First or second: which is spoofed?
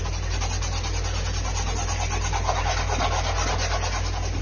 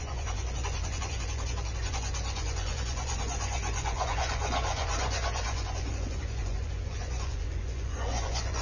second